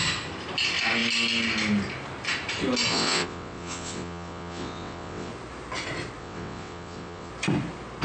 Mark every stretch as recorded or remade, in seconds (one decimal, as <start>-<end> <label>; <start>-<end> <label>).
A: 0.0-2.9 recorded; 2.9-5.3 remade; 5.3-6.2 recorded; 6.2-7.3 remade; 7.3-8.0 recorded